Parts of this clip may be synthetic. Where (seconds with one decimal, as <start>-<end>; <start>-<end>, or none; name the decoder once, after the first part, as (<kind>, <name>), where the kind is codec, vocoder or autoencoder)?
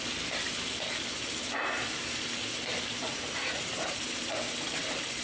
3.0-3.6 (vocoder, Vocos)